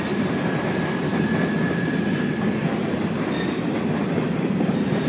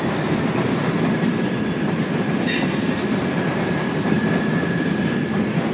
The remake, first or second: second